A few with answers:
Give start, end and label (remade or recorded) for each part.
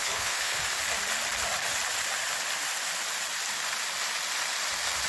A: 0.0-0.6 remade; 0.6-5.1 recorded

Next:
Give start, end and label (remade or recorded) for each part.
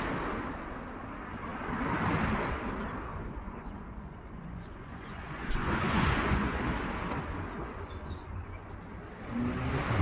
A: 0.0-3.1 recorded; 3.1-6.6 remade; 6.6-7.6 recorded; 7.6-8.7 remade; 8.7-10.0 recorded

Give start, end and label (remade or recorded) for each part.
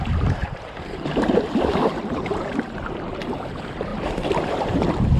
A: 0.0-0.4 recorded; 0.4-3.5 remade; 3.5-3.9 recorded; 3.9-5.2 remade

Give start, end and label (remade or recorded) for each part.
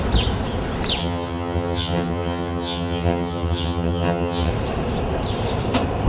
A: 0.0-1.0 recorded; 1.0-4.5 remade; 4.5-6.1 recorded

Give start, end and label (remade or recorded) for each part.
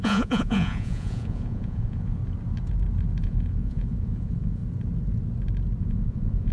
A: 0.0-2.2 remade; 2.2-3.2 recorded; 3.2-4.6 remade; 4.6-5.8 recorded; 5.8-6.5 remade